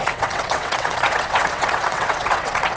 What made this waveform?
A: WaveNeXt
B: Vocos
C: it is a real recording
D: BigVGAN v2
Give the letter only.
A